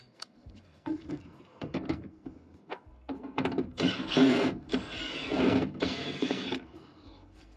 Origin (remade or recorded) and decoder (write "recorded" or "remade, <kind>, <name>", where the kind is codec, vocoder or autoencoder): remade, codec, SNAC